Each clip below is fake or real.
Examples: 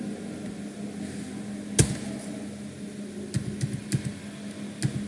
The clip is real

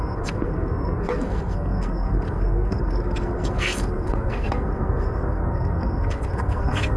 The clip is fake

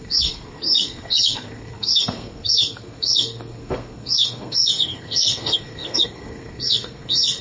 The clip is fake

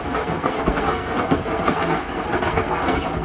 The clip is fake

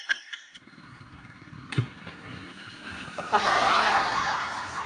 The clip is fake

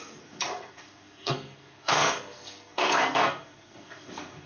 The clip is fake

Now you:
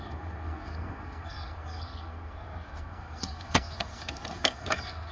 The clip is fake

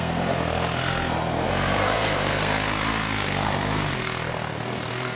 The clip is fake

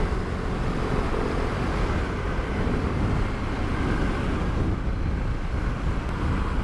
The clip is real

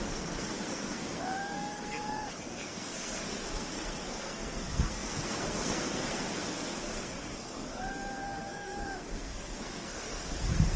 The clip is fake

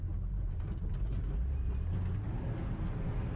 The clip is real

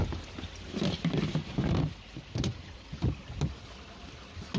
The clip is real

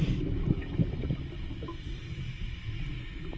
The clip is real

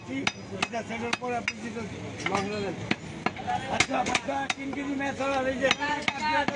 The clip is real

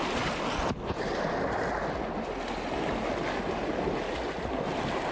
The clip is real